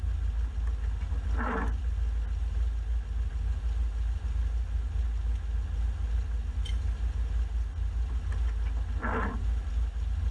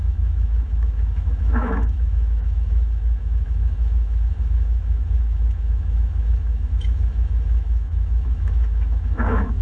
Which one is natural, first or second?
first